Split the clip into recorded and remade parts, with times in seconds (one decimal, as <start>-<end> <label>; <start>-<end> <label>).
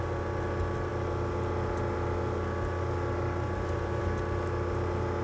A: 0.0-5.2 recorded